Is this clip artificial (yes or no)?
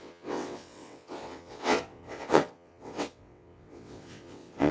yes